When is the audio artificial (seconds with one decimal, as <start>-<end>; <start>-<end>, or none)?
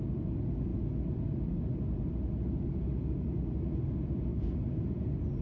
none